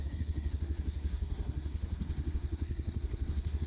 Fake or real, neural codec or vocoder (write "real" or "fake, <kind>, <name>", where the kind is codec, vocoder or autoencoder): fake, codec, SNAC